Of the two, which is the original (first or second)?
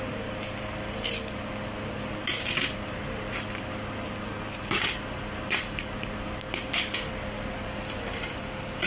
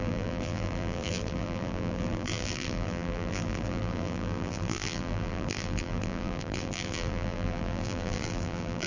first